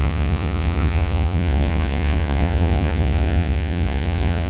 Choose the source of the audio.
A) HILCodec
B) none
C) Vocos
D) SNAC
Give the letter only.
C